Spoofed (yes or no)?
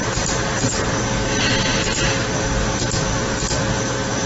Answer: no